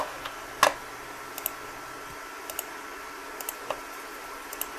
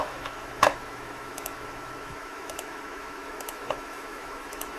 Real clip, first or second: first